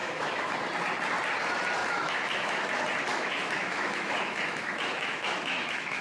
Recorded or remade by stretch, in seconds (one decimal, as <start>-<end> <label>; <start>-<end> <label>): 0.0-0.5 remade; 0.5-1.8 recorded; 1.8-2.7 remade; 2.7-3.1 recorded; 3.1-6.0 remade